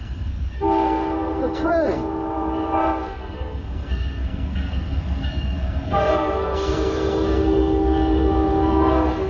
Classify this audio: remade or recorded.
remade